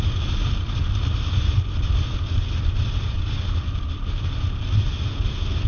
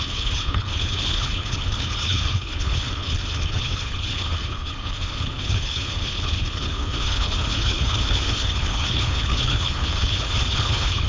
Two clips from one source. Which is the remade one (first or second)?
second